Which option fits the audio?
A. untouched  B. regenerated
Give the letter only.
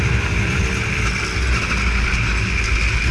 A